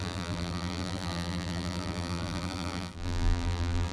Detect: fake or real fake